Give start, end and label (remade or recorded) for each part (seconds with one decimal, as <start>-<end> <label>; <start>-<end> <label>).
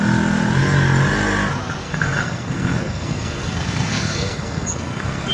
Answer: 0.0-1.8 recorded; 1.8-5.3 remade